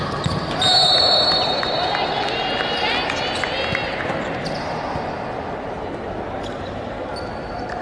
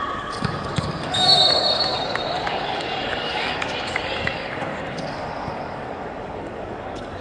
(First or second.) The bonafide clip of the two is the first